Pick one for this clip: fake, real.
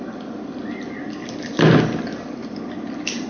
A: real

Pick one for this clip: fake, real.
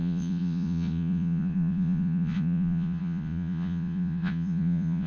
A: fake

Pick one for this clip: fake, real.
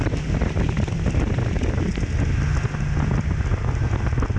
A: real